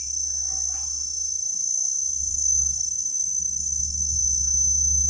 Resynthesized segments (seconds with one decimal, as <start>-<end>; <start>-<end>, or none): 2.3-4.2